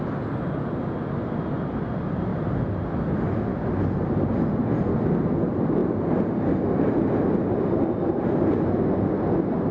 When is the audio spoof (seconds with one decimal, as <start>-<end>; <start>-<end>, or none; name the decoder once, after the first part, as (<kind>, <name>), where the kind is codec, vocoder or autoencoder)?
none